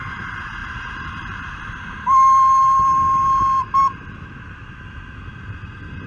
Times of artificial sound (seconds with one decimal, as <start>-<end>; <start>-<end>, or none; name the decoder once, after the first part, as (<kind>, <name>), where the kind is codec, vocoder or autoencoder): 0.6-4.1 (vocoder, BigVGAN v2)